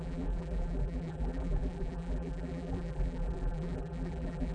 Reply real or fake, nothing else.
fake